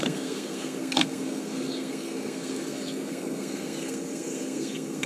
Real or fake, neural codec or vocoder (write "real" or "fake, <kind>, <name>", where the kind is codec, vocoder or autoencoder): fake, codec, SNAC